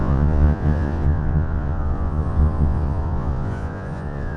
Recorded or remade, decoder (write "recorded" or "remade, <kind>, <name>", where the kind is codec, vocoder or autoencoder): remade, vocoder, Vocos